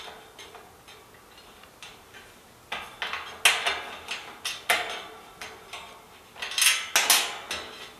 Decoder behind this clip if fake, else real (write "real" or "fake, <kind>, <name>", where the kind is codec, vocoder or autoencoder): real